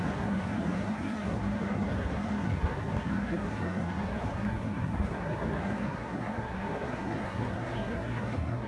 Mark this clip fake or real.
fake